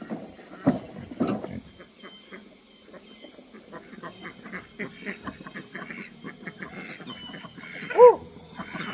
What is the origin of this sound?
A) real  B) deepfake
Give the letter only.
A